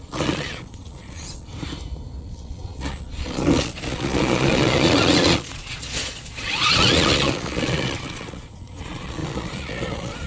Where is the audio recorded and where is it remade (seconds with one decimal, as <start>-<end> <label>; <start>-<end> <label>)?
0.0-1.5 remade; 1.5-2.2 recorded; 2.2-10.3 remade

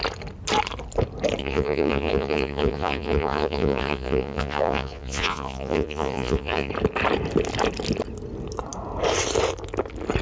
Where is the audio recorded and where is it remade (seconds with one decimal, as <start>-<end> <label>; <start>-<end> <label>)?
0.0-1.4 recorded; 1.4-6.7 remade; 6.7-10.2 recorded

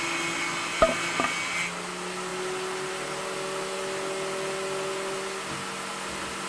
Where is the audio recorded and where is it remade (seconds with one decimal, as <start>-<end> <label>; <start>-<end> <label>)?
0.0-6.5 recorded

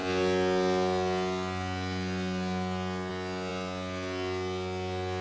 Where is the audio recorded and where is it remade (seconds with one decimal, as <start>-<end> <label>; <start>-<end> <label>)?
0.0-5.2 recorded

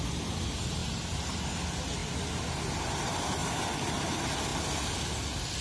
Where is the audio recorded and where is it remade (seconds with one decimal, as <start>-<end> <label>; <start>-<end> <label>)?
0.0-5.6 recorded

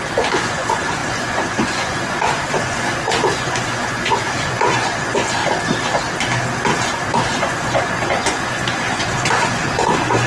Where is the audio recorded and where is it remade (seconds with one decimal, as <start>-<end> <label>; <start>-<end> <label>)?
0.0-5.4 remade; 5.4-6.8 recorded; 6.8-10.3 remade